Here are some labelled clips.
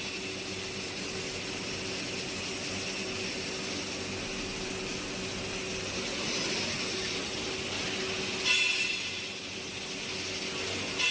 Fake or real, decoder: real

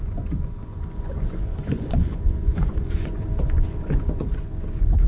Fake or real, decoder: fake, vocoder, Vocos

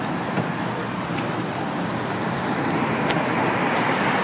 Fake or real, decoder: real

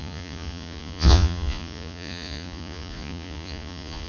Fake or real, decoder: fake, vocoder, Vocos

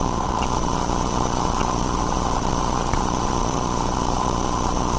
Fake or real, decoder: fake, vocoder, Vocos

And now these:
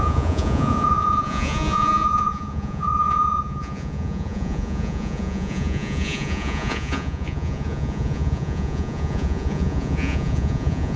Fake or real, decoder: fake, vocoder, Vocos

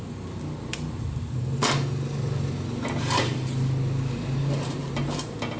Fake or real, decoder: real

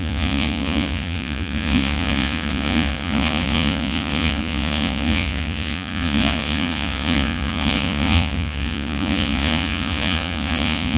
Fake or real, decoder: fake, vocoder, Vocos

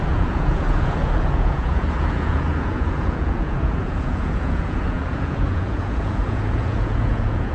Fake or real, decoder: fake, vocoder, Vocos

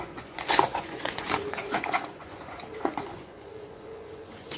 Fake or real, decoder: fake, vocoder, Vocos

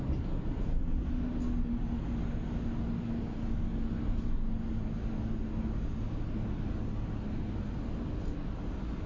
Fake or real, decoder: real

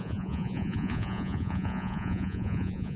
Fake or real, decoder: fake, vocoder, Vocos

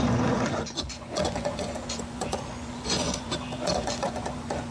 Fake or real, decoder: fake, vocoder, Vocos